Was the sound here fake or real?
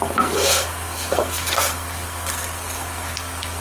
fake